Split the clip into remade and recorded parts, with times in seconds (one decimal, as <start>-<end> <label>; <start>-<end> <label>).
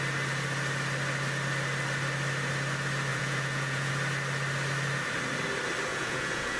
0.0-3.1 recorded; 3.1-3.9 remade; 3.9-5.9 recorded; 5.9-6.6 remade